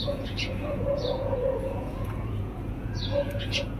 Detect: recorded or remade remade